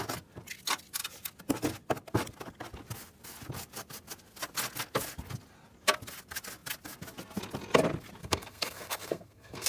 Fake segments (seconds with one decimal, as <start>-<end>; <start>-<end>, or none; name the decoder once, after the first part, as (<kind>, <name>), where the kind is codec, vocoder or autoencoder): 8.2-9.7 (codec, SNAC)